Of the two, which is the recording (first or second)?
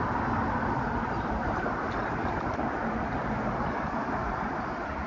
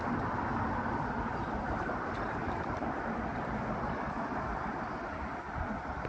first